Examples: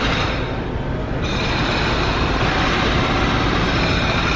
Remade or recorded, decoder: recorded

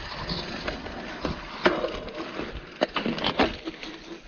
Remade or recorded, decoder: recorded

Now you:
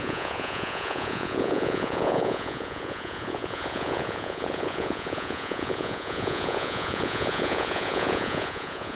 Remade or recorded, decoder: remade, vocoder, Vocos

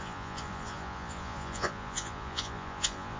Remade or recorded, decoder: remade, vocoder, Vocos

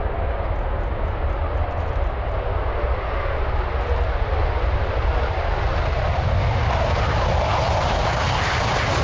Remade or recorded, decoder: recorded